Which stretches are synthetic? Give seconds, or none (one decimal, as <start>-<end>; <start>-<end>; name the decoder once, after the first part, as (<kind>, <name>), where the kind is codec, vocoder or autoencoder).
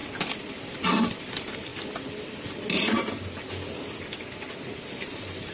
0.0-1.7 (vocoder, BigVGAN v2); 5.0-5.5